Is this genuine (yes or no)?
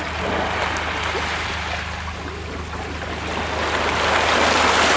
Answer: yes